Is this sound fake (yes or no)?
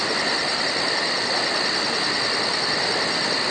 no